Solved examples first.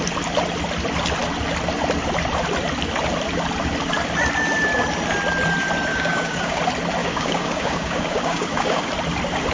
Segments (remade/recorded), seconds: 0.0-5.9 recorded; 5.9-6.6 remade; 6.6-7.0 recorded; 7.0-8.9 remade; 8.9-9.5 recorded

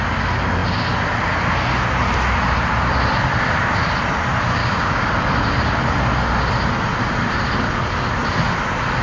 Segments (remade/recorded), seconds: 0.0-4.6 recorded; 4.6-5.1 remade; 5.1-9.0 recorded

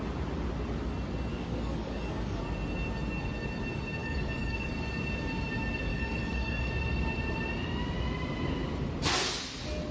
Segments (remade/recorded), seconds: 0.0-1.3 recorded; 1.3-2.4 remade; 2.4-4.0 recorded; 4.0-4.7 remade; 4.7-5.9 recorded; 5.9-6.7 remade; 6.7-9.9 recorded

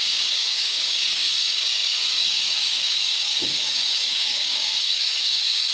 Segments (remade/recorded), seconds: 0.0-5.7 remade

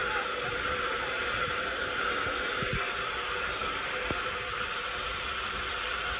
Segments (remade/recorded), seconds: 0.0-6.2 recorded

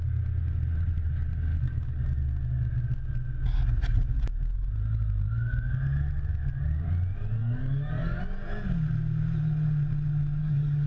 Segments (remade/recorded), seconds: 0.0-1.5 recorded; 1.5-2.0 remade; 2.0-7.4 recorded; 7.4-8.2 remade; 8.2-10.4 recorded; 10.4-10.9 remade

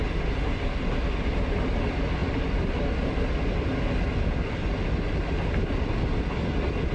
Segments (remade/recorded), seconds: 0.0-6.9 recorded